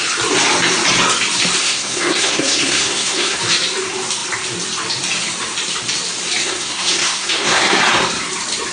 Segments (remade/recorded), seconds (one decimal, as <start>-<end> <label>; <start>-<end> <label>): 0.0-1.6 recorded; 1.6-3.4 remade; 3.4-6.4 recorded; 6.4-7.8 remade; 7.8-8.7 recorded